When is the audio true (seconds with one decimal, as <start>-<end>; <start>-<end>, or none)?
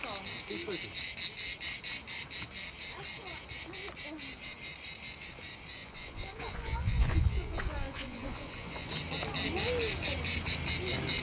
0.0-5.8; 8.9-11.2